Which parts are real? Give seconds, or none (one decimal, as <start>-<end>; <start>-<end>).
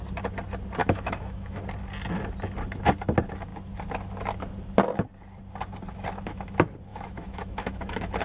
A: 0.0-0.8; 1.6-6.9